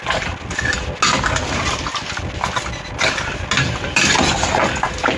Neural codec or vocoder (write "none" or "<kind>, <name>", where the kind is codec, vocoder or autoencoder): none